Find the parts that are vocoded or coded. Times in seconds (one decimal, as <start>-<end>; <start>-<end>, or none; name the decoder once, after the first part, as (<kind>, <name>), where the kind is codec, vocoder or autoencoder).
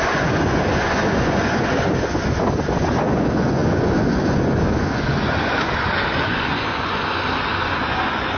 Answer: 0.0-8.4 (vocoder, Vocos)